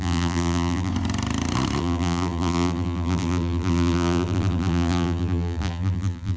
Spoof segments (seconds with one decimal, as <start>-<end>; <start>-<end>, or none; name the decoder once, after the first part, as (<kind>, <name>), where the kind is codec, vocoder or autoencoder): 0.0-0.9 (vocoder, BigVGAN v2); 1.8-6.4